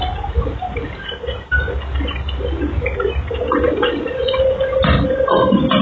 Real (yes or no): yes